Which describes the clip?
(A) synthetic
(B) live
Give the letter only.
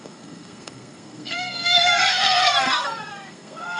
A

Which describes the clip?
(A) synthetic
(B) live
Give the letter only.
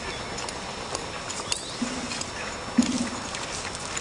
B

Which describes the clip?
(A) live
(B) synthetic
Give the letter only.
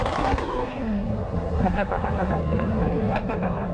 B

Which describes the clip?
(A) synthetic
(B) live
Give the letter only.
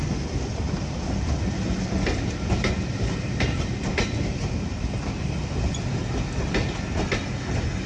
B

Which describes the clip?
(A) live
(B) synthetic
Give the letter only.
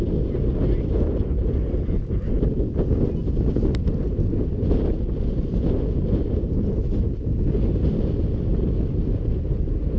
A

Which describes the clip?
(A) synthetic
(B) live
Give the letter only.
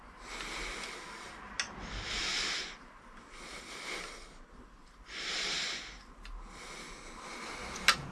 B